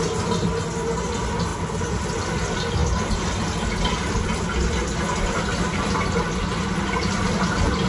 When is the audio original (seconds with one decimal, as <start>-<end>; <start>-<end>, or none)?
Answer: 0.0-7.9